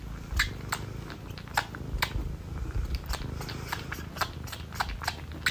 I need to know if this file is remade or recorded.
recorded